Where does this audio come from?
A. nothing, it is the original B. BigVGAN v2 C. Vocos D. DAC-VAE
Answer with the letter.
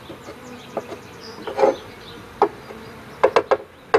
A